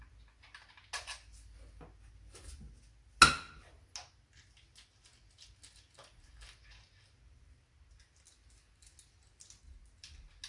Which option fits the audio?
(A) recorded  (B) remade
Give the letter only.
A